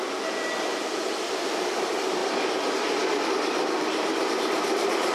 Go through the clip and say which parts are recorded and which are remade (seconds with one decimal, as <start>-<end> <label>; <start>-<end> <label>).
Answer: 0.0-1.8 recorded; 1.8-2.2 remade; 2.2-3.3 recorded; 3.3-5.1 remade